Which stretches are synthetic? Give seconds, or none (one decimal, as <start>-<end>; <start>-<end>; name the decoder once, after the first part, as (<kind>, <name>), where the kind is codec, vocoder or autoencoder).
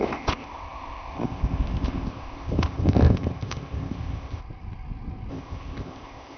0.0-4.4 (codec, ZipCodec); 5.3-6.4